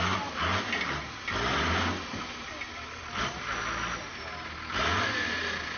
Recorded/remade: recorded